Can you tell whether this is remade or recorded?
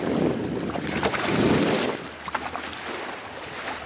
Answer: recorded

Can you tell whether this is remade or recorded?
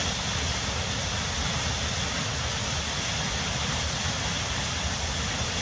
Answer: recorded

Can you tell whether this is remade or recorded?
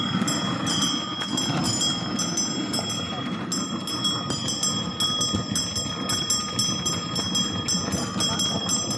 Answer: recorded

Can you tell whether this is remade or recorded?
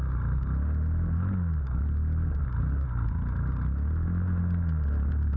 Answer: recorded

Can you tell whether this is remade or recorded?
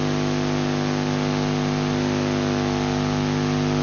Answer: recorded